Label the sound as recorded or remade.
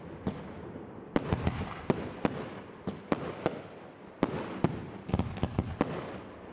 recorded